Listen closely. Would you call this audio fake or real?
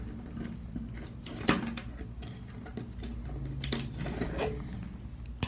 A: real